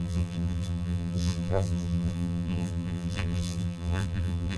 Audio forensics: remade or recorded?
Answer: remade